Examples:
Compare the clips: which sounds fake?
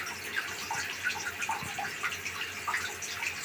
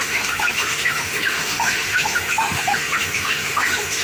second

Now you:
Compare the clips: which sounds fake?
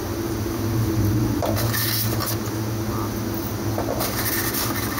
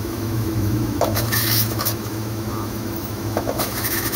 second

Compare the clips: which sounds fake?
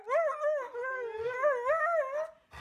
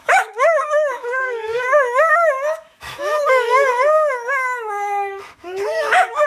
second